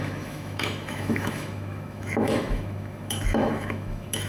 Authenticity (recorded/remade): remade